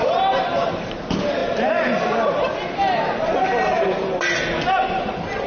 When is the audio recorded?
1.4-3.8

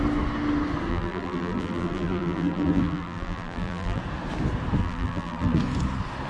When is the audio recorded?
0.0-0.9; 4.0-4.8; 5.6-6.3